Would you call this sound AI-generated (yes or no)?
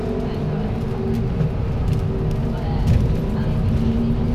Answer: no